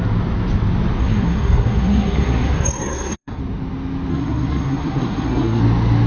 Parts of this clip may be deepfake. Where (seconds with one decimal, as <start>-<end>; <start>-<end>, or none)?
1.0-3.4; 4.1-5.6